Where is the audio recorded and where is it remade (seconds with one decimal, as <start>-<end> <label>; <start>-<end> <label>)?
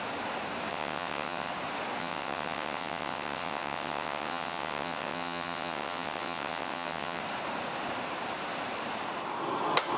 0.0-0.7 recorded; 0.7-1.5 remade; 1.5-2.0 recorded; 2.0-7.2 remade; 7.2-10.0 recorded